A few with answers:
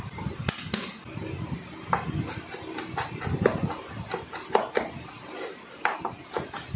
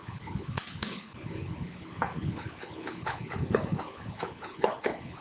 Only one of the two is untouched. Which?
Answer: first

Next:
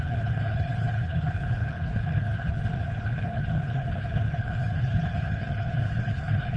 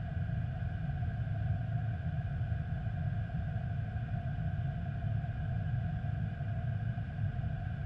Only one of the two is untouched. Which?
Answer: second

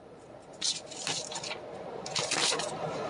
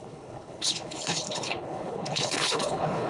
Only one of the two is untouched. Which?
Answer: first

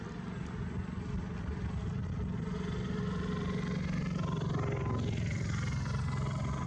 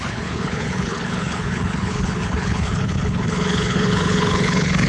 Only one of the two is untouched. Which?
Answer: first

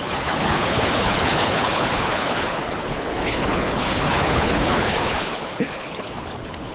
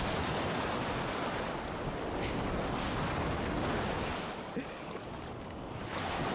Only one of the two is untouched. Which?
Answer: second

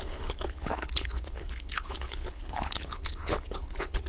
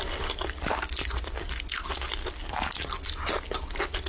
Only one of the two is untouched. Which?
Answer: second